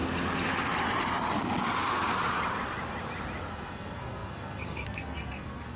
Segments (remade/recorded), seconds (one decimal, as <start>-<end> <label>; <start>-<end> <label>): 0.0-3.5 recorded; 3.5-5.8 remade